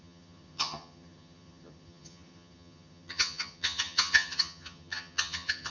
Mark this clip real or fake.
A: fake